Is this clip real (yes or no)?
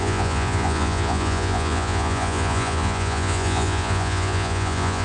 no